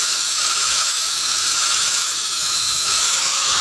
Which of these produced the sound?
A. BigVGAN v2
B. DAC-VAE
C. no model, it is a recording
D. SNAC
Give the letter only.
B